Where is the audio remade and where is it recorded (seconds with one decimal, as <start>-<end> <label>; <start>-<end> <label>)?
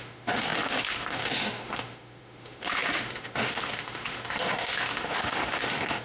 0.0-6.0 remade